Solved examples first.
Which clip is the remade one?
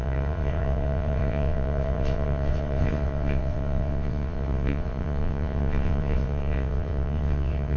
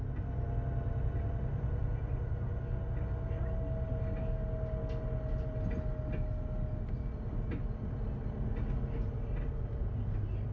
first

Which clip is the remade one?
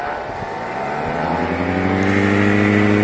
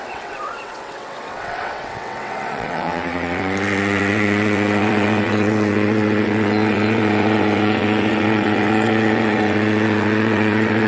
second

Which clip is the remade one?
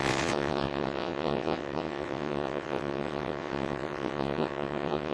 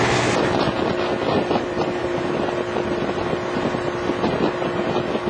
first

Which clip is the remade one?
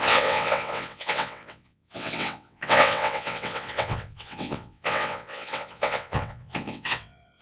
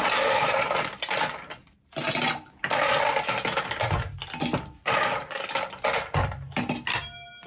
first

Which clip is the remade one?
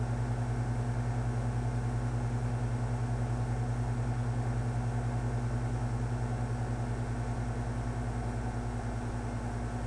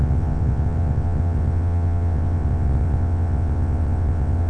second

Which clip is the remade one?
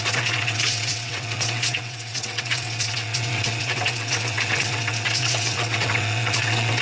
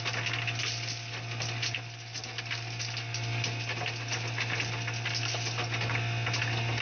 first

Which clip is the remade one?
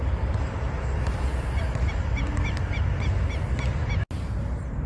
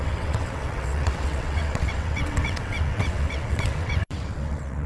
second